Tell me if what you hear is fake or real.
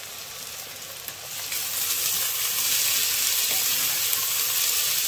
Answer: real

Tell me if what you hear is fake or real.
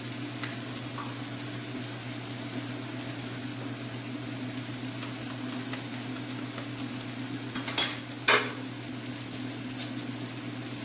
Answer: real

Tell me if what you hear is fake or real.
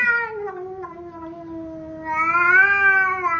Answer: real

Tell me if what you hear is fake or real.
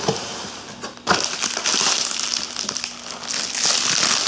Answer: real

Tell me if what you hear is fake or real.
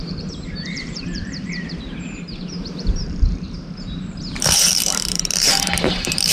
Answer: fake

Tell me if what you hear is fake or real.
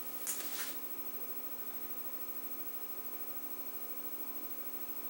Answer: real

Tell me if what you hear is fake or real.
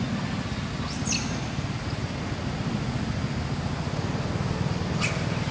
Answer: real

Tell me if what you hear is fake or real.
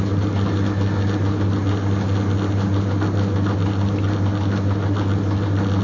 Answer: real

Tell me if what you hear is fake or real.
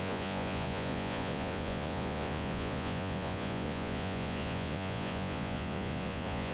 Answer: fake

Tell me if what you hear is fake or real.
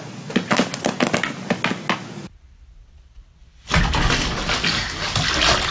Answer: real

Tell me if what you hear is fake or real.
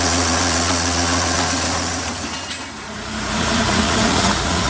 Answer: fake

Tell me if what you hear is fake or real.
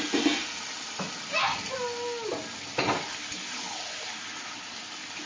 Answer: real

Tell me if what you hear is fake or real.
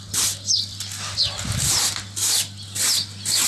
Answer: real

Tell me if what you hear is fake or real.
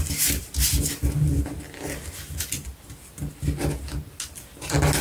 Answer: real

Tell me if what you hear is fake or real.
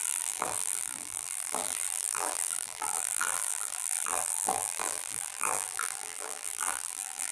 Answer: fake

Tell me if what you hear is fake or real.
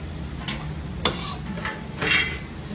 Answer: real